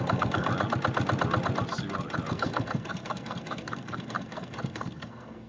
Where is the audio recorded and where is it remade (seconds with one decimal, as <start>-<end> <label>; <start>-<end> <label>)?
0.0-0.5 remade; 0.5-2.3 recorded; 2.3-5.5 remade